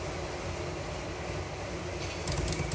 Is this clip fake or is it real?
real